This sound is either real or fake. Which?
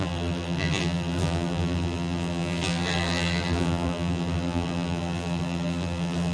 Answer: fake